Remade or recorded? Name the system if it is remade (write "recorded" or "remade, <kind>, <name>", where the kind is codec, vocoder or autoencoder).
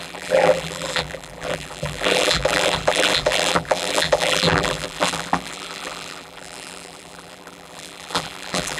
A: remade, vocoder, BigVGAN v2